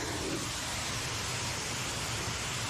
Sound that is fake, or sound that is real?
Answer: real